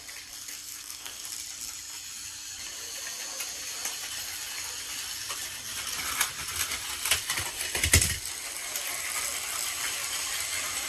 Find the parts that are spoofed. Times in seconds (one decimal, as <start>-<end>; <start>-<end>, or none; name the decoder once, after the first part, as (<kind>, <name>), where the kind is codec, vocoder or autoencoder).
0.5-1.2 (codec, SNAC)